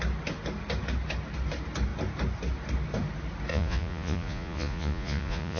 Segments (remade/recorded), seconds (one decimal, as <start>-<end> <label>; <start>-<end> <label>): 0.0-3.5 recorded; 3.5-5.6 remade